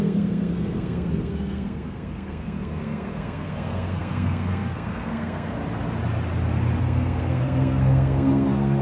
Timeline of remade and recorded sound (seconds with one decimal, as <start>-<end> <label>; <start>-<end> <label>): 0.0-5.6 remade; 5.6-6.8 recorded; 6.8-8.8 remade